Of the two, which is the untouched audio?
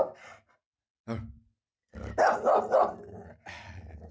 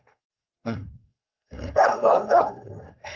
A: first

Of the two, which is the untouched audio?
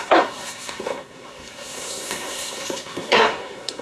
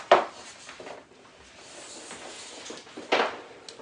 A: second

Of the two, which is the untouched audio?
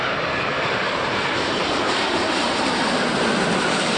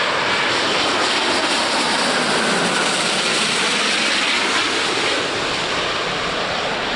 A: second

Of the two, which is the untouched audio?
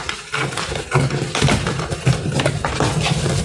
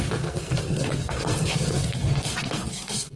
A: first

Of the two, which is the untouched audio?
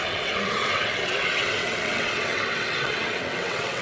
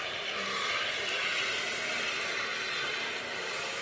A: second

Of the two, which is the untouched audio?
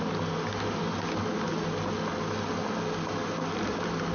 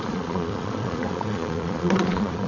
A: first